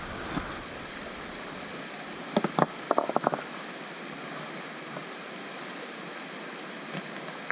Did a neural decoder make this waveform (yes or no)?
no